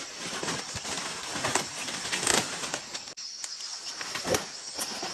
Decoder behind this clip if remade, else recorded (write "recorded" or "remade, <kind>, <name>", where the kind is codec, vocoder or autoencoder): recorded